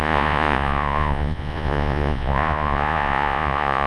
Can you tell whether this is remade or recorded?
remade